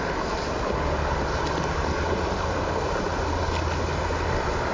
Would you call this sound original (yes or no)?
yes